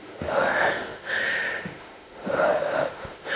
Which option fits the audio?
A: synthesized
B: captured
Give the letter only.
A